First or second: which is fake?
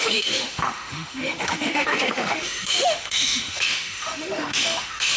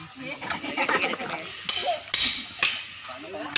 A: first